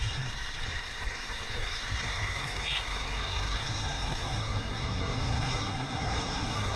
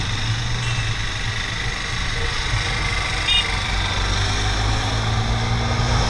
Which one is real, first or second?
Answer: second